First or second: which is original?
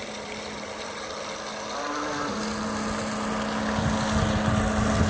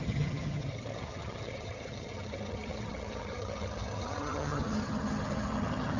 first